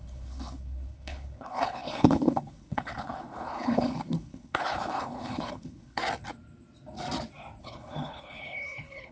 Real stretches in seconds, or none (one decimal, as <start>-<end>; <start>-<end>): 6.0-7.6